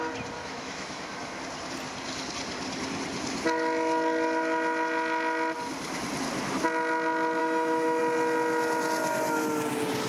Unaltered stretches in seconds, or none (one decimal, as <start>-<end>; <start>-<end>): 0.0-0.4; 1.4-7.4; 8.0-10.1